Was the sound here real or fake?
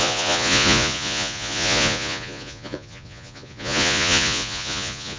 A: fake